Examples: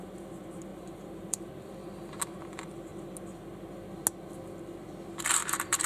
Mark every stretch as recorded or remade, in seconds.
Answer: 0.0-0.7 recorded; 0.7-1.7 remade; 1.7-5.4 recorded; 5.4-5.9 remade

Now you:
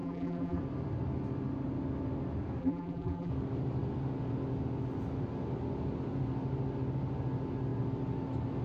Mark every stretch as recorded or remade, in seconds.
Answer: 0.0-0.6 remade; 0.6-2.6 recorded; 2.6-3.3 remade; 3.3-8.6 recorded

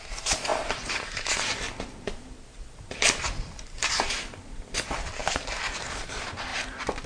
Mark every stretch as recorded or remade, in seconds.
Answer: 0.0-0.5 recorded; 0.5-4.8 remade; 4.8-6.5 recorded; 6.5-7.1 remade